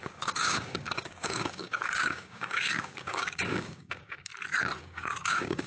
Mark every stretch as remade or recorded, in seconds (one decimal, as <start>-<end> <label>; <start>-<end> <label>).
0.0-4.3 remade; 4.3-4.8 recorded; 4.8-5.7 remade